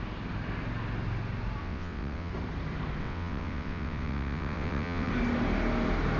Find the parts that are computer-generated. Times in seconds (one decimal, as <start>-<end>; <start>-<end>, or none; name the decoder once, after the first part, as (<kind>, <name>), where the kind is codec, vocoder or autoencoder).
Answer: 1.6-2.3 (vocoder, WaveNeXt); 3.0-5.1